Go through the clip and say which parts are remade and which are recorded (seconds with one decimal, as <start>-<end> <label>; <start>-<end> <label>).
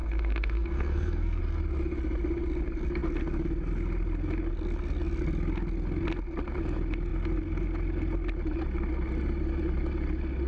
0.0-1.4 remade; 1.4-10.5 recorded